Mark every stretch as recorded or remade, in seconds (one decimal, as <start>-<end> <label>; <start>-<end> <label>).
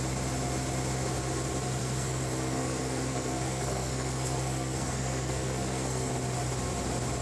0.0-1.8 recorded; 1.8-6.1 remade; 6.1-7.2 recorded